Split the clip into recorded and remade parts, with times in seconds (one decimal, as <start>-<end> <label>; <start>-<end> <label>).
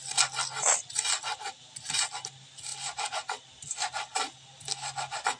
0.0-5.4 recorded